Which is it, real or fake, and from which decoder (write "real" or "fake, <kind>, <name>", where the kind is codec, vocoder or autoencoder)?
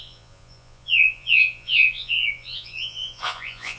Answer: fake, vocoder, Vocos